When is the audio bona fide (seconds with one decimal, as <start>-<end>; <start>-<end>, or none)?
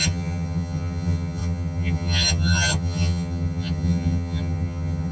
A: none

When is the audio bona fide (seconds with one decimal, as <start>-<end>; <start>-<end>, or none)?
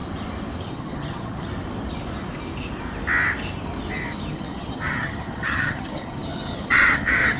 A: 0.0-0.7; 1.5-4.3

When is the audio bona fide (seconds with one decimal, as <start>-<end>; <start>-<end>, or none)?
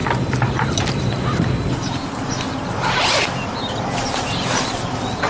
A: 0.0-5.3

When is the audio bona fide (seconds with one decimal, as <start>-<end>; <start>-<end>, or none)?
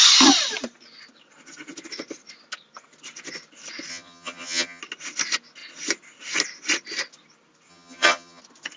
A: 0.0-3.9; 4.8-7.7; 8.4-8.8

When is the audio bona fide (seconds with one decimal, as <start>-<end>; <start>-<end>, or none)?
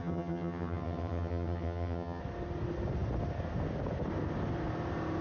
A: 2.2-5.2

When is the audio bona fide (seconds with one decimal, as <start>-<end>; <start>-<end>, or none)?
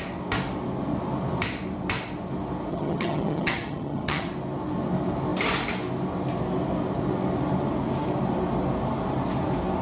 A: 0.0-2.7; 4.3-9.8